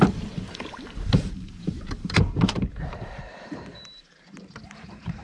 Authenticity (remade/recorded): remade